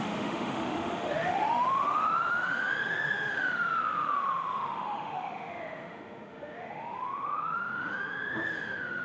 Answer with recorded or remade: remade